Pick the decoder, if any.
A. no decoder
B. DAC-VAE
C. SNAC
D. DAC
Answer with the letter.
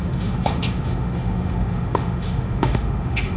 B